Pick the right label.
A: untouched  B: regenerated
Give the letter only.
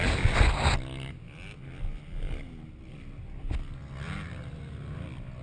A